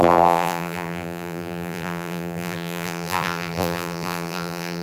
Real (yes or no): no